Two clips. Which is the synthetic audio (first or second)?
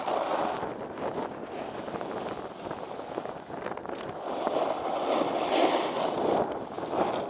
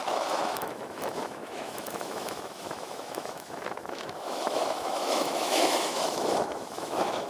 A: second